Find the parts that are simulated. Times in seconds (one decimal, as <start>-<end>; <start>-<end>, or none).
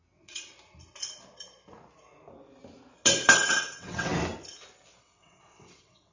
0.0-0.5; 3.5-4.1; 5.0-6.1